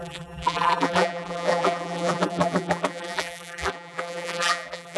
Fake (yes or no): yes